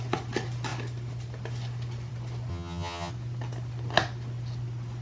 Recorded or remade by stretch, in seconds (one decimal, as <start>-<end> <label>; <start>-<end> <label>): 0.0-2.5 recorded; 2.5-3.1 remade; 3.1-5.0 recorded